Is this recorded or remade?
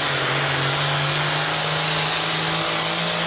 recorded